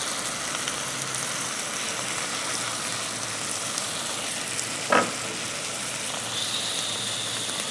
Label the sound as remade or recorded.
recorded